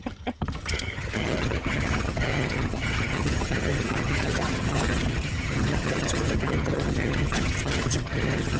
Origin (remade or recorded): remade